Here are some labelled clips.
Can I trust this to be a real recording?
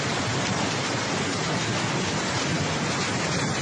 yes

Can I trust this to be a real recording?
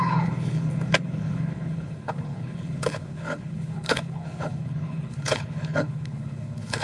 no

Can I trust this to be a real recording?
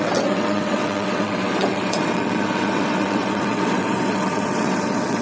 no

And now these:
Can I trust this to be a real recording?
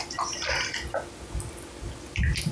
yes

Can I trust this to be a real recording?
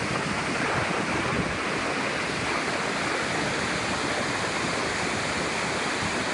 yes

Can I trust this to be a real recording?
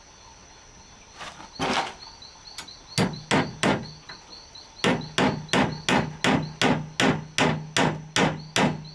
yes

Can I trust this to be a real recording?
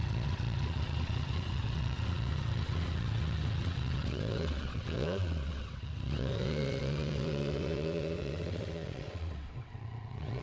no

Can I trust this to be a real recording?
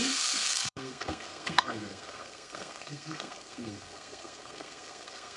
no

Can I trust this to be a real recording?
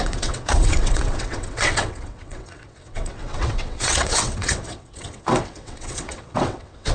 no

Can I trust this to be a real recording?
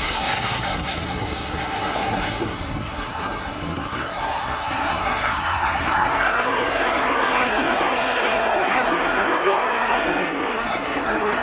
no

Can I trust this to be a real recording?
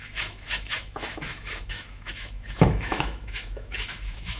no